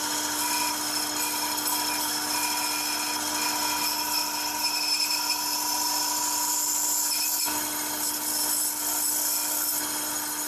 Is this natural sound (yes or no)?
yes